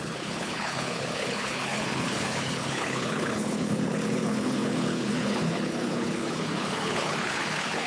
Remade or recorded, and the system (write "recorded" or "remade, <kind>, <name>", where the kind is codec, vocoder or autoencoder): remade, codec, HILCodec